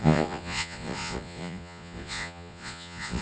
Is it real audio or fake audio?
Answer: fake